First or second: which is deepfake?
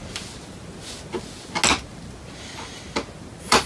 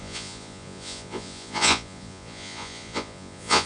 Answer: second